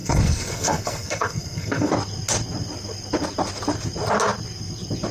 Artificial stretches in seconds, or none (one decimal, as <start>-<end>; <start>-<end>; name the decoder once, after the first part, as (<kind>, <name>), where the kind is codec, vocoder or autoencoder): 0.0-1.9 (codec, SNAC)